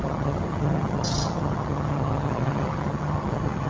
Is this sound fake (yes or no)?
yes